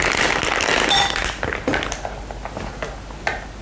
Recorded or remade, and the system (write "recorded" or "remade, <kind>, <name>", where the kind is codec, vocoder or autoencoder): recorded